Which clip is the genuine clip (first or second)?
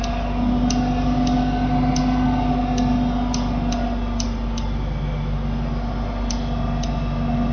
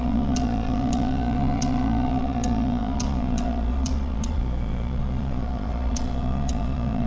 first